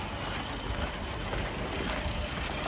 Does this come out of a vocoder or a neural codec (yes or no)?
no